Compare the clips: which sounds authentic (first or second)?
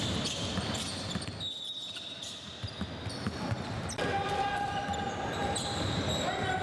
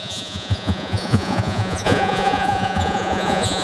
first